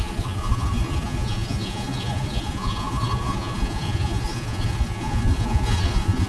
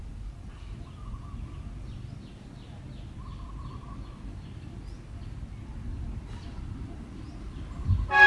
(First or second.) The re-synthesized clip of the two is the first